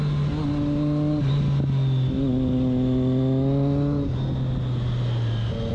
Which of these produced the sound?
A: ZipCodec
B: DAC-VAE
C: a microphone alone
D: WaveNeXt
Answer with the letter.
C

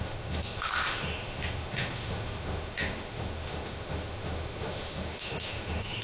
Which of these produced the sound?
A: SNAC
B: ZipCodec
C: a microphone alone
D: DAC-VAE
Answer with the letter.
D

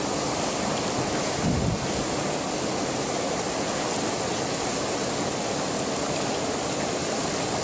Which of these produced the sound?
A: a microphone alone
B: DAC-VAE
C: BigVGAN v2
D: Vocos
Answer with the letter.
A